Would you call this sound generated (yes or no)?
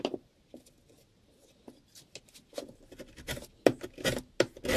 no